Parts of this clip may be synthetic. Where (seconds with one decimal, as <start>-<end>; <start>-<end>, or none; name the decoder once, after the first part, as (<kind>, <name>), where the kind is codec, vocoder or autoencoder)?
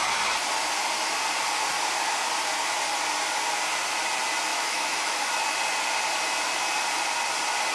4.5-5.3 (autoencoder, DAC-VAE)